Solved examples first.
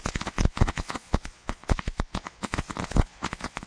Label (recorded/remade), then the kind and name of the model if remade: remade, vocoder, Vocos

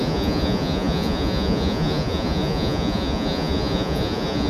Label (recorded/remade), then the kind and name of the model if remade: remade, vocoder, Vocos